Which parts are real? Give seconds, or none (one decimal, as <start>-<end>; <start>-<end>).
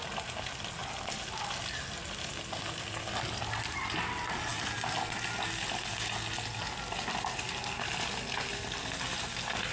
0.0-9.7